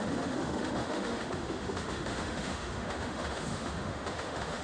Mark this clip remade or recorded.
remade